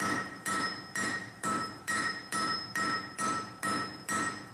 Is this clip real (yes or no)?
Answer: no